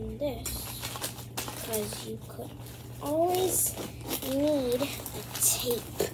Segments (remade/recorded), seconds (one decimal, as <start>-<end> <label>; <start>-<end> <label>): 0.0-6.1 recorded